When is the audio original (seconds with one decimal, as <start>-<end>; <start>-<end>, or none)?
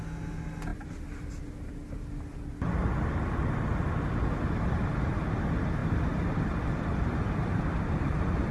0.0-0.7; 1.4-5.8; 7.6-8.5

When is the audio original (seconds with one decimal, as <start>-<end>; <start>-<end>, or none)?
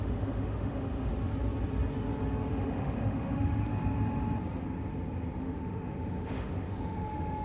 1.1-2.5; 3.7-5.4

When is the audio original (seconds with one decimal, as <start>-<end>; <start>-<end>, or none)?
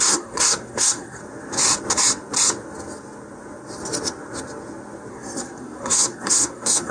1.2-5.1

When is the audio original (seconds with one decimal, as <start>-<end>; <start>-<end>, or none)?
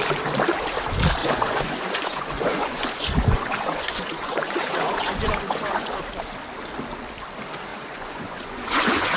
0.0-1.2; 6.0-7.7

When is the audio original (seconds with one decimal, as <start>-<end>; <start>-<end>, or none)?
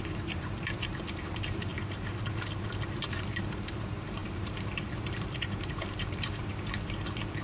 1.7-3.0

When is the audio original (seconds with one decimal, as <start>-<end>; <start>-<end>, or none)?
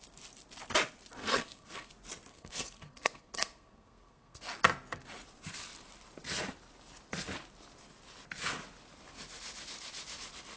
0.0-1.2; 1.9-2.3; 4.5-10.6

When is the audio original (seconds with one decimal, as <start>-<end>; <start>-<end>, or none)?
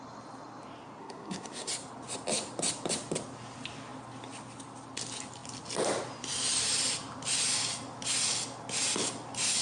0.0-1.0; 1.7-9.6